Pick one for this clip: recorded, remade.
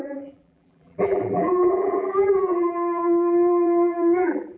remade